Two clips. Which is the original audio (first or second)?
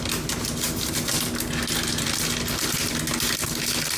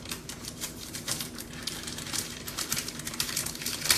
first